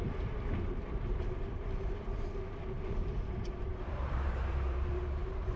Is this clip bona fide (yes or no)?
no